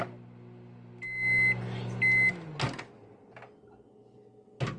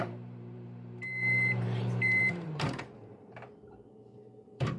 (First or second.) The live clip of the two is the first